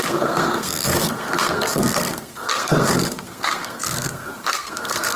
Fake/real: fake